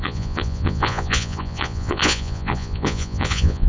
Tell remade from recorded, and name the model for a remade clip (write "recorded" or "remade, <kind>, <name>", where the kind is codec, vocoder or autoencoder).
remade, vocoder, Vocos